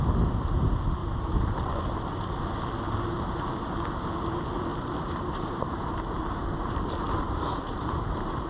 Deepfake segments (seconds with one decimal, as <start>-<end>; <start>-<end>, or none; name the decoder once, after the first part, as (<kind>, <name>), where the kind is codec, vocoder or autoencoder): 1.0-1.7 (vocoder, BigVGAN v2); 4.7-8.5